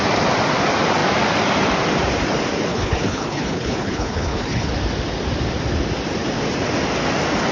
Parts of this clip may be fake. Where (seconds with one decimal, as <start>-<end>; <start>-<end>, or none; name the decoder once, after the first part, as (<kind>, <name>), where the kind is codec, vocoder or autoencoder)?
2.7-4.7 (codec, HILCodec)